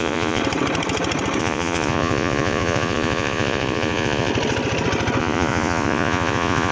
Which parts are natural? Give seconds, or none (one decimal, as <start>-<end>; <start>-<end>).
0.4-1.4; 4.3-5.2